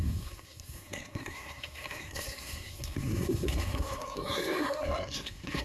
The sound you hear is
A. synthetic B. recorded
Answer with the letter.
A